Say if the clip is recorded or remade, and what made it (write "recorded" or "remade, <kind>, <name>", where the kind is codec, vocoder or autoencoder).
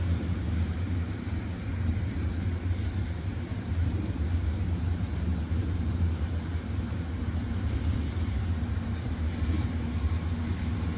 remade, vocoder, BigVGAN v2